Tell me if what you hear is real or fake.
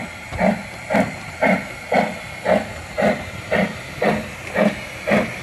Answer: real